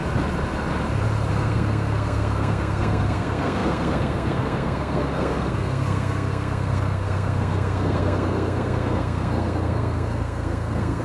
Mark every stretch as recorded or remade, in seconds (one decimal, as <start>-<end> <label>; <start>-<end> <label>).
0.0-1.3 recorded; 1.3-11.0 remade